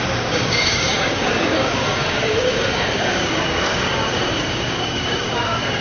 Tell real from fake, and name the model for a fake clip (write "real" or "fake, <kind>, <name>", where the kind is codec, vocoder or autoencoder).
fake, codec, DAC